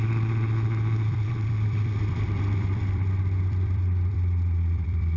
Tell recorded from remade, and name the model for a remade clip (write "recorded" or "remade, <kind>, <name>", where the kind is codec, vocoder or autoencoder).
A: remade, vocoder, BigVGAN v2